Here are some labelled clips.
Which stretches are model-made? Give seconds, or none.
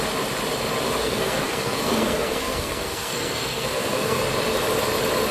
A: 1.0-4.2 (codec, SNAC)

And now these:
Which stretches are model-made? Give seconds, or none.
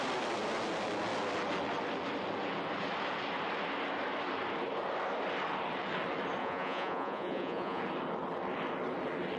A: 6.4-7.8 (vocoder, Vocos)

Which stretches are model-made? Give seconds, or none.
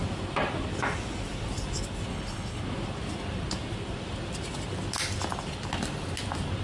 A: 2.1-2.6 (codec, HILCodec)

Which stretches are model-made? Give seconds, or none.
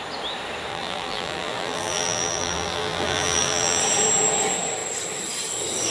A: 0.7-3.8 (vocoder, BigVGAN v2)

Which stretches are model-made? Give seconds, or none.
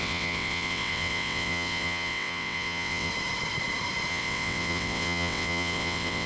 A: 0.0-3.1 (vocoder, WaveNeXt); 4.1-6.3